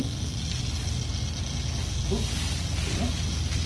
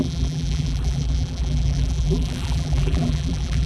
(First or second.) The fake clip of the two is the second